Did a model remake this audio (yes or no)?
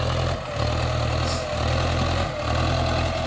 no